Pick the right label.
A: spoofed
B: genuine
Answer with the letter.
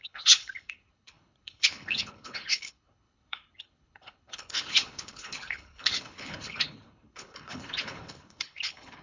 A